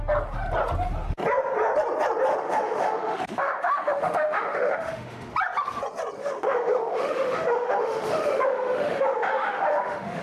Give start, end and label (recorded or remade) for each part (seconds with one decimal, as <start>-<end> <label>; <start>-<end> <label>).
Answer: 0.0-2.3 recorded; 2.3-5.3 remade; 5.3-6.2 recorded; 6.2-10.2 remade